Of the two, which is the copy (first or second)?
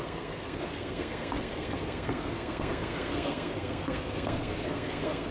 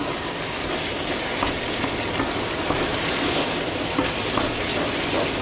first